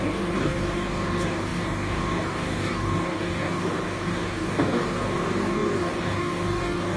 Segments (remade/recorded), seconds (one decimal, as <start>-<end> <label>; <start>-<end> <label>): 0.0-7.0 remade